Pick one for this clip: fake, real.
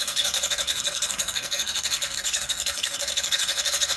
fake